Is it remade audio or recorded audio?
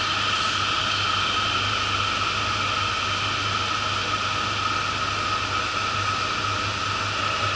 recorded